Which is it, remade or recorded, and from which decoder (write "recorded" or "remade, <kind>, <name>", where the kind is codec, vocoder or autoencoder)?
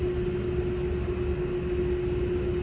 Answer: recorded